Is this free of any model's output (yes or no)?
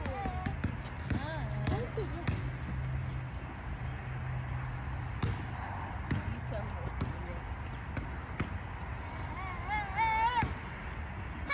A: yes